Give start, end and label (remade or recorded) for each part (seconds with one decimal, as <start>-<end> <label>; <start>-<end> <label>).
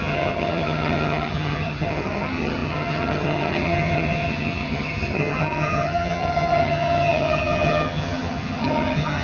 0.0-9.2 remade